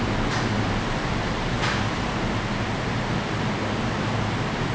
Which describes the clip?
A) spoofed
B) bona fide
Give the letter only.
B